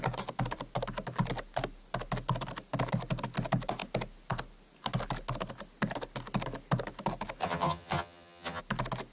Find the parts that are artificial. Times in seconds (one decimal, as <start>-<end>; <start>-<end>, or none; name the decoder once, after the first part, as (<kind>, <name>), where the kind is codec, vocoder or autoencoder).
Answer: 7.4-8.6 (vocoder, HiFi-GAN)